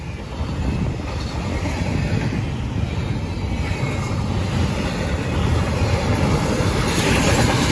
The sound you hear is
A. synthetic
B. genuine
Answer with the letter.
B